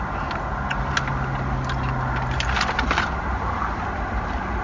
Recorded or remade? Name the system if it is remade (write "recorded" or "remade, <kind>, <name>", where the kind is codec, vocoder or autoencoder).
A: recorded